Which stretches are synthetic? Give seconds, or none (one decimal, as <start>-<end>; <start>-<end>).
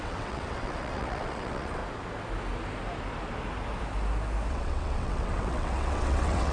0.0-1.8; 4.5-6.5